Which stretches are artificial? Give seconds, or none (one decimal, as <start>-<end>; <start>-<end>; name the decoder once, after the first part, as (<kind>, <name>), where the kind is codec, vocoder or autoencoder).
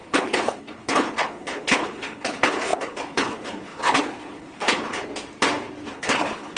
0.0-5.1 (codec, HILCodec); 5.9-6.6